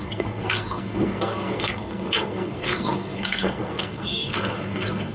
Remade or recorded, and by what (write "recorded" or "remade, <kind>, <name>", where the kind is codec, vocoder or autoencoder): remade, codec, SNAC